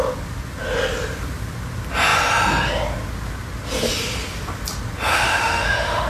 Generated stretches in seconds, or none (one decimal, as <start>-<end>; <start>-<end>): 5.1-6.1